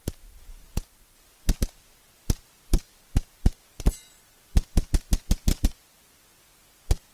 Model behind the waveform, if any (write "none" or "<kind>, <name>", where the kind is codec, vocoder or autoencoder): vocoder, BigVGAN v2